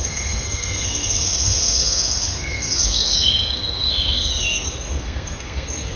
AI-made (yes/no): yes